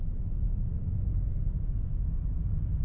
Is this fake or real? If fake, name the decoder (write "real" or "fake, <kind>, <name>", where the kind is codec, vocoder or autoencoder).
fake, vocoder, BigVGAN v2